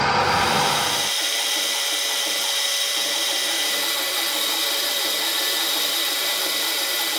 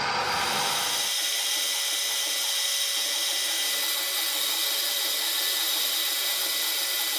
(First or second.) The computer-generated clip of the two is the first